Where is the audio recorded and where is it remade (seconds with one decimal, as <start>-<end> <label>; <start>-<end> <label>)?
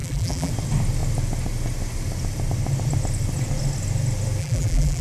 0.0-0.5 remade; 0.5-4.4 recorded; 4.4-5.0 remade